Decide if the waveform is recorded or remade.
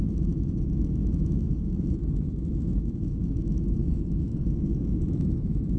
remade